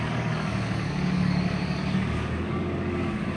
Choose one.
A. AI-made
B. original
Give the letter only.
A